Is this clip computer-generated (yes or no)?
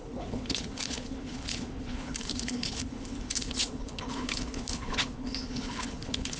yes